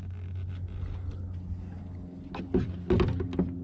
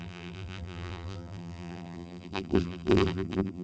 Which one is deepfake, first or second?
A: second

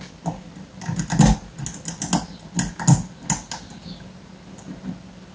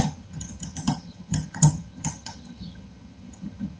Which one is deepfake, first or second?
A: second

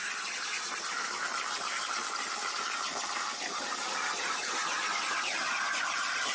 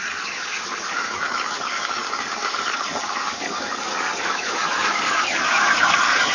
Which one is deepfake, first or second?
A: second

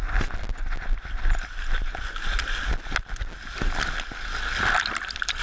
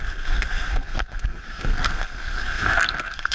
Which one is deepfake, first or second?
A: second